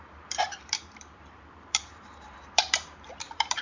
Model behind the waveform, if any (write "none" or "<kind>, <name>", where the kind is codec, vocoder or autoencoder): vocoder, BigVGAN v2